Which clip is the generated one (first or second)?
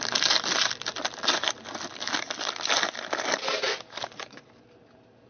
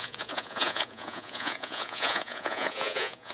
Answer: second